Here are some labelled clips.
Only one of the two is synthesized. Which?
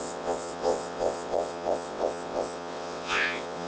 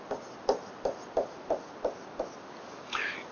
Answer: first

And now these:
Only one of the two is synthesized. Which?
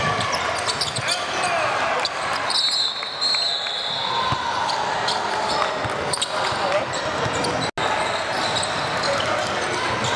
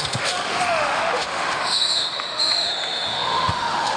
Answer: second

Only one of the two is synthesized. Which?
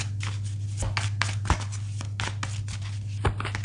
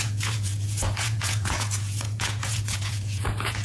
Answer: second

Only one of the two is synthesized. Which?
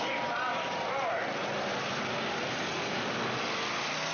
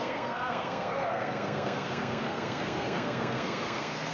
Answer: second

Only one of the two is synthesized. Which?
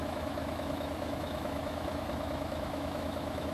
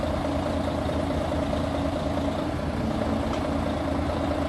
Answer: first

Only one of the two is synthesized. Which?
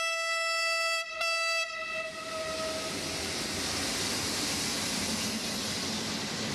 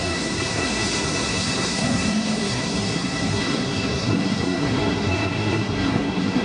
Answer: second